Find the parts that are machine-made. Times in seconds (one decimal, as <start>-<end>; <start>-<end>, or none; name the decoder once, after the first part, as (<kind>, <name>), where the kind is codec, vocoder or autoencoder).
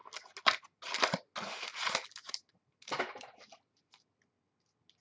none